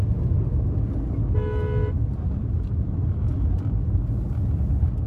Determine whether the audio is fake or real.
real